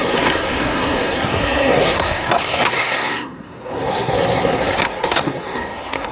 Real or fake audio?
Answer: fake